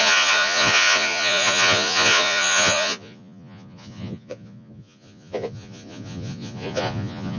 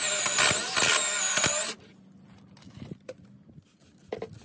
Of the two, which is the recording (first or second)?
second